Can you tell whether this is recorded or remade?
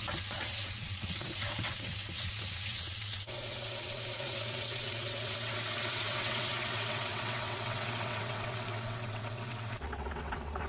remade